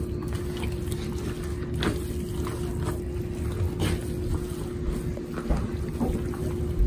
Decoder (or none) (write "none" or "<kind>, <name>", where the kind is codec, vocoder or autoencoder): none